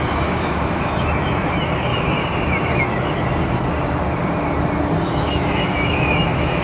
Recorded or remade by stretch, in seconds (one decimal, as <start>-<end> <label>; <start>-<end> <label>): 0.0-1.9 remade; 1.9-2.8 recorded; 2.8-3.3 remade; 3.3-5.1 recorded; 5.1-6.6 remade